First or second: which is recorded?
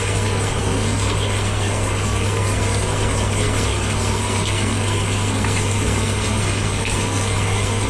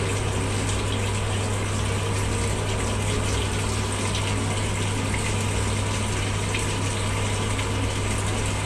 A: second